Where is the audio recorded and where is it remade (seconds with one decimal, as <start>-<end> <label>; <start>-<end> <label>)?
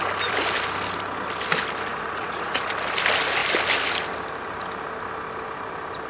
0.0-1.9 recorded; 1.9-2.7 remade; 2.7-6.1 recorded